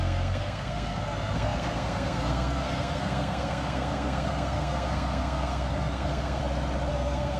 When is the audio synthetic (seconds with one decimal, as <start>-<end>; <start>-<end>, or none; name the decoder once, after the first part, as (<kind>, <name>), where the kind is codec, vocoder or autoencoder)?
0.0-6.4 (codec, SNAC); 6.9-7.4